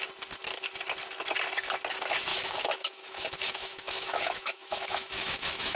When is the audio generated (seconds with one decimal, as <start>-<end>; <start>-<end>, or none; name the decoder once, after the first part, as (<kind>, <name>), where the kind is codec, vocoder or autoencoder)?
2.3-5.8 (autoencoder, DAC-VAE)